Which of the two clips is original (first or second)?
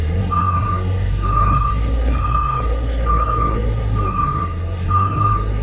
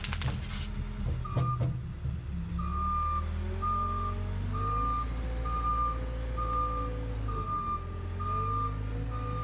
second